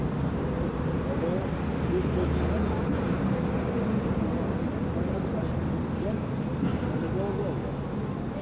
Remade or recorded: recorded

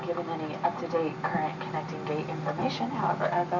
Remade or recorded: recorded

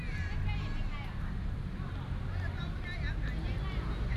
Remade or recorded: recorded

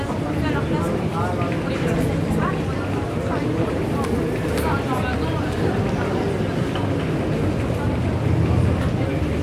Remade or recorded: recorded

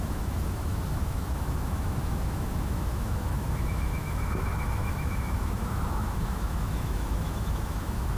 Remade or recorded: remade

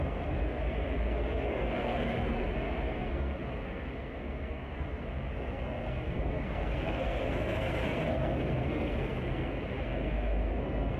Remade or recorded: remade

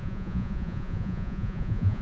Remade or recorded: remade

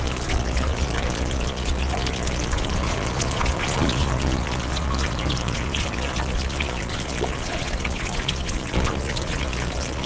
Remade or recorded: remade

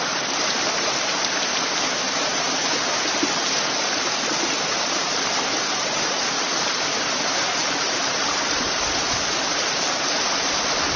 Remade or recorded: remade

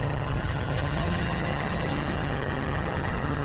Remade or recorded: remade